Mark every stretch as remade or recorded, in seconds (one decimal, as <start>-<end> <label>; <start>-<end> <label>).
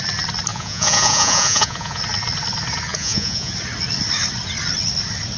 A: 0.0-0.5 recorded; 0.5-2.0 remade; 2.0-2.9 recorded; 2.9-3.5 remade; 3.5-5.4 recorded